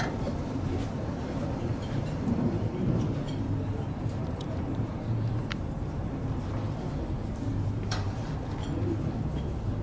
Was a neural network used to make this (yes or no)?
yes